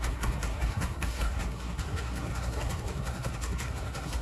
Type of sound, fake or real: fake